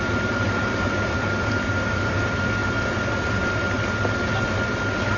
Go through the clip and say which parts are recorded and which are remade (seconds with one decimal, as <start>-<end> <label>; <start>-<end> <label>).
0.0-2.6 remade; 2.6-5.2 recorded